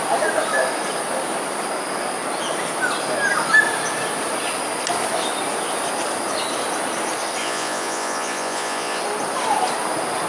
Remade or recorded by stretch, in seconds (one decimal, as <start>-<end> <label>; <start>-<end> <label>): 0.0-7.4 recorded; 7.4-9.0 remade; 9.0-10.3 recorded